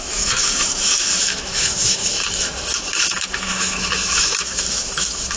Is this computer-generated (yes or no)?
yes